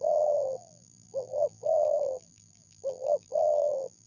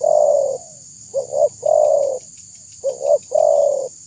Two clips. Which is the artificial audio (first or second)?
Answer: first